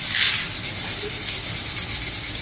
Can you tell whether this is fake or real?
real